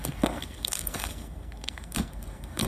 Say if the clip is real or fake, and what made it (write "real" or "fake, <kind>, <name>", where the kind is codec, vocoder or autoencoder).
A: fake, codec, SNAC